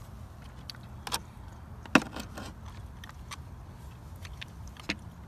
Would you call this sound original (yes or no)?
yes